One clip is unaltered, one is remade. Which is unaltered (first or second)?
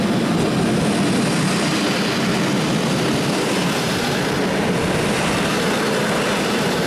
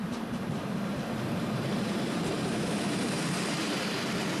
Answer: first